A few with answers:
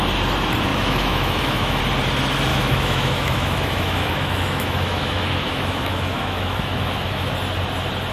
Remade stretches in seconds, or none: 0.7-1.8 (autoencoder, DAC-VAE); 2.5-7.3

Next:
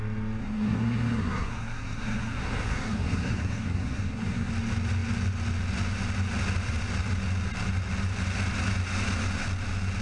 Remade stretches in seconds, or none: 0.4-4.5 (codec, SNAC)

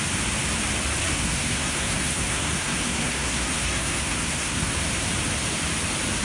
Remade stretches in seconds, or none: 1.0-4.7 (codec, SNAC)

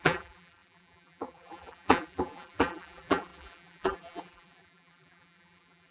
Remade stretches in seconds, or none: 0.0-5.9 (vocoder, BigVGAN v2)

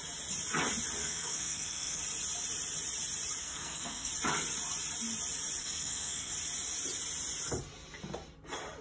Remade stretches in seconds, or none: 1.0-2.0 (codec, SNAC); 3.4-4.1; 5.6-6.3

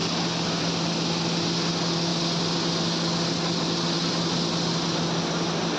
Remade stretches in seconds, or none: none